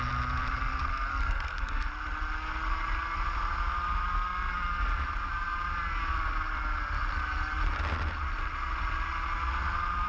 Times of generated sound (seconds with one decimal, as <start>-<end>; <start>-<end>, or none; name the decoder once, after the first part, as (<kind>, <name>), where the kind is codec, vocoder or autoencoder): 1.1-1.9 (codec, SNAC)